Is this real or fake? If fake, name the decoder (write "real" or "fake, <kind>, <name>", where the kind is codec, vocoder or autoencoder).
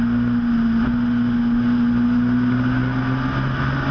real